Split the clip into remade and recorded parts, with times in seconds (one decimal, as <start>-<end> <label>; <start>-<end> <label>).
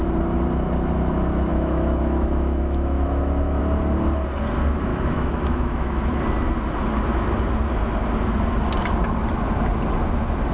0.0-1.5 recorded; 1.5-3.6 remade; 3.6-4.9 recorded; 4.9-6.2 remade; 6.2-10.5 recorded